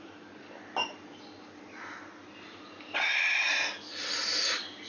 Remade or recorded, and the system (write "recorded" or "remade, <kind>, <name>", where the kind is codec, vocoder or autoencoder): recorded